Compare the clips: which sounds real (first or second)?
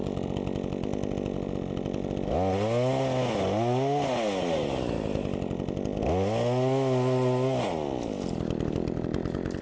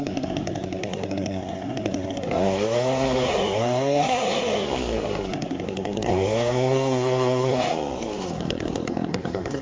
first